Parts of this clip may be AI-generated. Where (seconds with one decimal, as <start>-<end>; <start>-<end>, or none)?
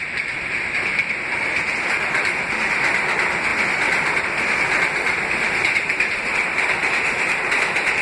none